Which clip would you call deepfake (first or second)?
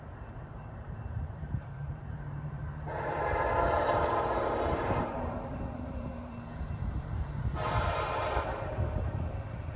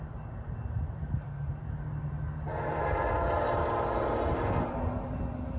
first